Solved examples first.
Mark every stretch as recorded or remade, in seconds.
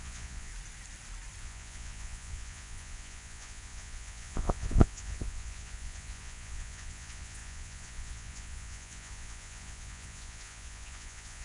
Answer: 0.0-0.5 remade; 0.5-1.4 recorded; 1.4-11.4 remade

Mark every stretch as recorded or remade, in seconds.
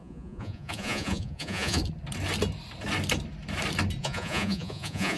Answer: 0.0-1.8 remade; 1.8-4.0 recorded; 4.0-5.2 remade